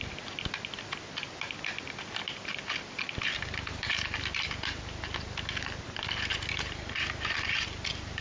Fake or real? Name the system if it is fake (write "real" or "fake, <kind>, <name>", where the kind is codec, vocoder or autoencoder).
real